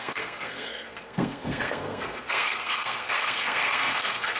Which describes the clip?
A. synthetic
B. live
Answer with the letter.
A